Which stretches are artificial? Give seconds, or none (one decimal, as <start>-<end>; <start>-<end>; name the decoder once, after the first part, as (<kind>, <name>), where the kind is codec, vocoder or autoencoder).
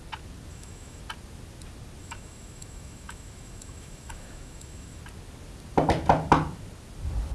0.5-1.0 (autoencoder, DAC-VAE); 2.0-5.0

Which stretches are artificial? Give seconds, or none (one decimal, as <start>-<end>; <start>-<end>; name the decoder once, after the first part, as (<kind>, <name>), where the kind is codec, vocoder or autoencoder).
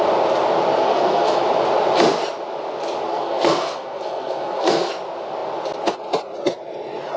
0.7-1.4 (codec, SNAC); 3.1-4.9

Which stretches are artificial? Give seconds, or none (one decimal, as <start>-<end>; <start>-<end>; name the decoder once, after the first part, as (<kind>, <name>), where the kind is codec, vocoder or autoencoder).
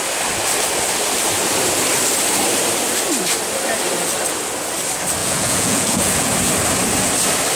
5.2-6.3 (vocoder, Vocos)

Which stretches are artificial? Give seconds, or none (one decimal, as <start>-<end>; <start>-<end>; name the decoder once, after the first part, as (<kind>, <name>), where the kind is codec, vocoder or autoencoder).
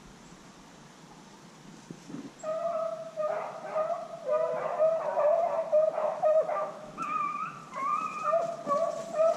6.0-7.6 (autoencoder, DAC-VAE)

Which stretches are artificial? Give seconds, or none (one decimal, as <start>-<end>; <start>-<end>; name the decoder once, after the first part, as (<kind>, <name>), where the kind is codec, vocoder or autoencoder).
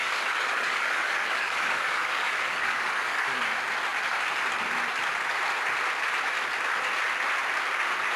0.0-3.4 (codec, DAC)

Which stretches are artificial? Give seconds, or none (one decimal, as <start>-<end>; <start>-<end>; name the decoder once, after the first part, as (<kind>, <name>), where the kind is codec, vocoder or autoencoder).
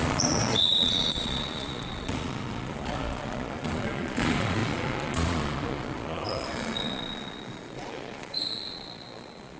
0.0-9.6 (vocoder, Vocos)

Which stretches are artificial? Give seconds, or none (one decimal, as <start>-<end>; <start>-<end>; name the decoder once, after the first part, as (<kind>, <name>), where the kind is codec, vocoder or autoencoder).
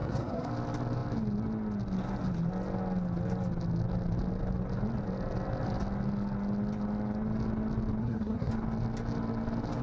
0.0-0.5 (codec, SNAC); 8.0-8.5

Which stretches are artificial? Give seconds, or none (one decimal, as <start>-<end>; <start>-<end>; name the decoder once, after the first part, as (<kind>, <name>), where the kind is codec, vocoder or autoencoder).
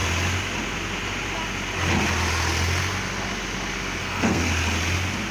4.0-4.5 (codec, SNAC)